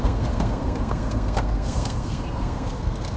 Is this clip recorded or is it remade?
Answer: remade